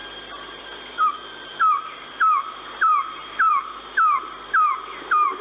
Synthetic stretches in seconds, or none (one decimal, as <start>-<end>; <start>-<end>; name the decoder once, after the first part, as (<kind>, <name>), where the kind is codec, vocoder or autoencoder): 0.0-0.6 (vocoder, BigVGAN v2); 1.5-4.7